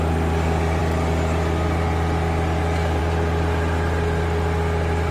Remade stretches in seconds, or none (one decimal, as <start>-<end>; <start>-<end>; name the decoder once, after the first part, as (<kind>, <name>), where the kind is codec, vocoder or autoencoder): none